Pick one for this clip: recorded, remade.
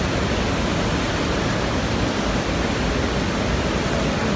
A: recorded